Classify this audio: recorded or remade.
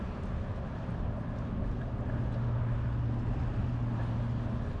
recorded